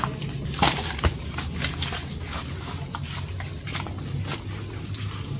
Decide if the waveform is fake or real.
real